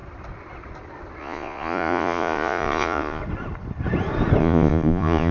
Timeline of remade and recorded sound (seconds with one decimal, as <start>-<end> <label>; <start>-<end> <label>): 0.0-1.2 recorded; 1.2-3.2 remade; 3.2-4.4 recorded; 4.4-5.3 remade